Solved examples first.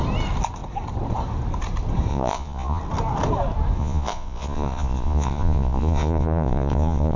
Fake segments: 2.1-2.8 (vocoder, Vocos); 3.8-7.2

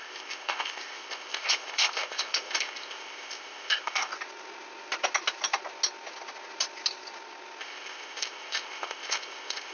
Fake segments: 0.0-4.1 (codec, ZipCodec); 7.6-9.7

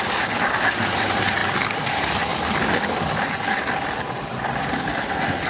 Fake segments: none

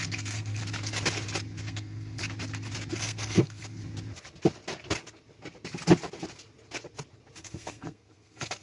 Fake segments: 0.0-0.6 (codec, SNAC); 1.6-2.2; 2.9-3.8; 7.4-8.6

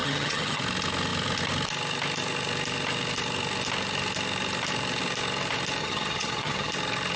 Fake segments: 0.0-0.6 (vocoder, HiFi-GAN); 5.8-6.7